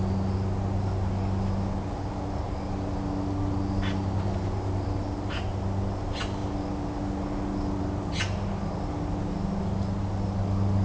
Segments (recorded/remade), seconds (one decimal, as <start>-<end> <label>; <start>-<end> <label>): 0.0-10.8 recorded

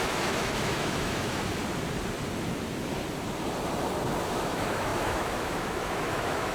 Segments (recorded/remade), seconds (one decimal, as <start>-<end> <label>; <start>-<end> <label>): 0.0-1.6 remade; 1.6-4.2 recorded; 4.2-6.5 remade

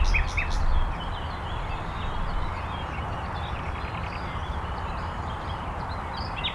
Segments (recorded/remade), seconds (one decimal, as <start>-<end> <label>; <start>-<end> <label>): 0.0-4.4 recorded; 4.4-6.1 remade; 6.1-6.5 recorded

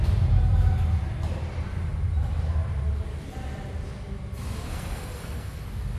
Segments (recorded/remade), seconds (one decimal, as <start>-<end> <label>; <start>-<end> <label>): 0.0-4.7 recorded; 4.7-5.6 remade; 5.6-6.0 recorded

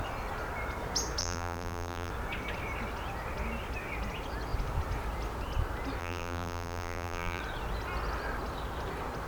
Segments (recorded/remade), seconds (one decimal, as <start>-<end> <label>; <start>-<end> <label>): 0.0-1.2 recorded; 1.2-2.1 remade; 2.1-6.0 recorded; 6.0-7.4 remade; 7.4-9.3 recorded